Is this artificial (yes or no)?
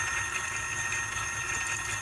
no